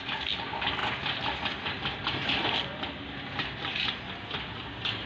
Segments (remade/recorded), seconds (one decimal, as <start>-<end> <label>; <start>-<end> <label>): 0.0-5.1 recorded